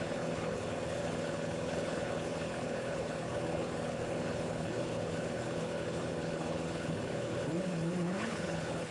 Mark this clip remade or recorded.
remade